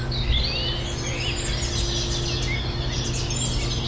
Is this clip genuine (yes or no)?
yes